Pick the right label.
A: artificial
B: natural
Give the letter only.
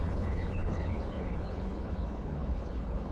A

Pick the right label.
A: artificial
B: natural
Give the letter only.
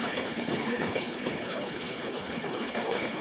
A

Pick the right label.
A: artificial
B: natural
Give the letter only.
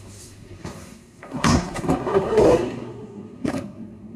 A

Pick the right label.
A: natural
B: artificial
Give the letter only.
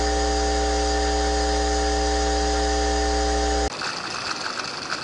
A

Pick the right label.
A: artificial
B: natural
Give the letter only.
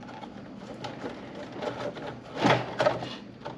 B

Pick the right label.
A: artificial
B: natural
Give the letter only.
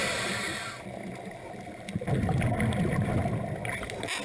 B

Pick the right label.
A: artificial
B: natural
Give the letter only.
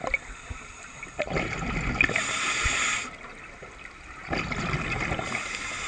B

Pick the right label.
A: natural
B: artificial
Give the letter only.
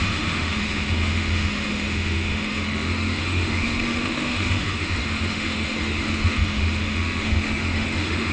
B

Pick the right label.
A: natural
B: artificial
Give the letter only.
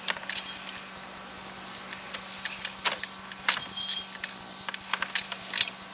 A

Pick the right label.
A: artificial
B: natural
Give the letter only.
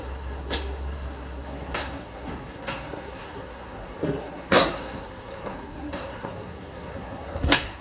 A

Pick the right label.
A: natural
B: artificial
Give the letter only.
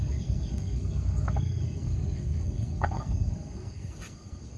B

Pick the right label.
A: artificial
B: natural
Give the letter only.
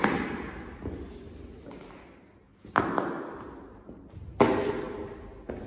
B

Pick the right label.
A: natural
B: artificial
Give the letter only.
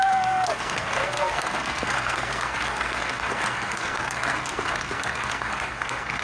B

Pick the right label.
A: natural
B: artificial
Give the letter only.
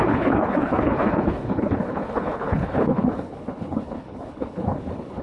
B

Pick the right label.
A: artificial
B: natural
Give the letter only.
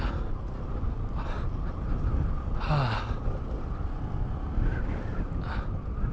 B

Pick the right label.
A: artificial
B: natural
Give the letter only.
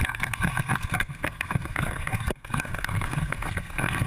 A